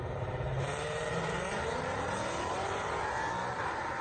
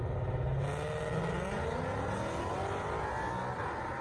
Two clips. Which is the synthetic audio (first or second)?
first